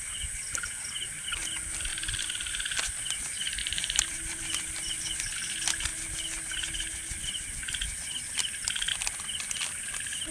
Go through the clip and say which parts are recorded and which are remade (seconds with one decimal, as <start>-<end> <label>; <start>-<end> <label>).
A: 0.0-1.9 recorded; 1.9-2.5 remade; 2.5-3.6 recorded; 3.6-5.0 remade; 5.0-10.3 recorded